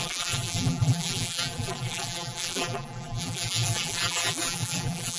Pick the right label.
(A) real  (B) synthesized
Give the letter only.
B